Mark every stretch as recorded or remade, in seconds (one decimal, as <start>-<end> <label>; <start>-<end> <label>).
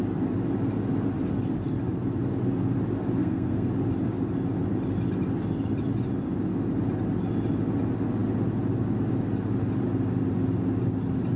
0.0-3.2 recorded; 3.2-3.7 remade; 3.7-11.4 recorded